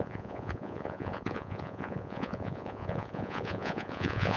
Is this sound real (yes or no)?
no